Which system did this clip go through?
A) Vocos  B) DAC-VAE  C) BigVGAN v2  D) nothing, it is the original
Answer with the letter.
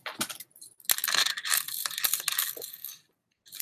D